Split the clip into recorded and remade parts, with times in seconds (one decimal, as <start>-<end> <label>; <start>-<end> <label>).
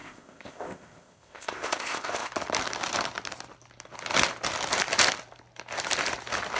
0.0-2.3 remade; 2.3-6.6 recorded